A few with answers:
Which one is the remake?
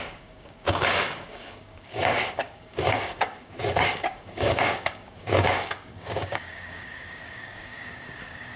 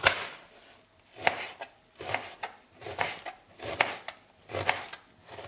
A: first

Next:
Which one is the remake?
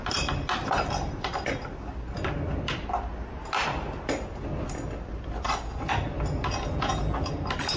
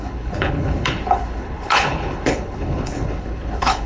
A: second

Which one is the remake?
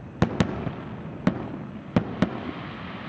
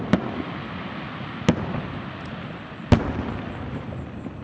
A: second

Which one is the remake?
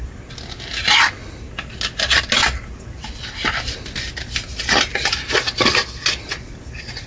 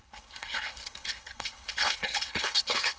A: second